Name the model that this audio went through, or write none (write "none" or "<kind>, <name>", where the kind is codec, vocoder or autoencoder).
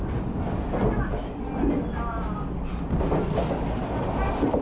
none